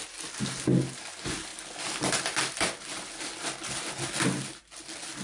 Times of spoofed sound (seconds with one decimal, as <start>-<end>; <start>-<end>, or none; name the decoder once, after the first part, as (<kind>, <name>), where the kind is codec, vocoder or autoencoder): none